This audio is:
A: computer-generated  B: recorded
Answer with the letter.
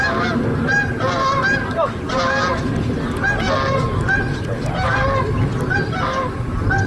B